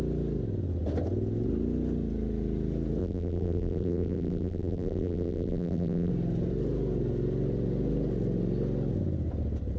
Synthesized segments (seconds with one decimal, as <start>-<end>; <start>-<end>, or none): 3.0-6.1